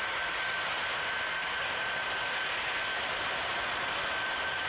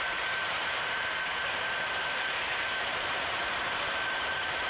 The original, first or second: first